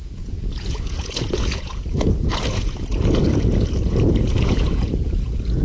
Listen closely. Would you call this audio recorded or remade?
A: remade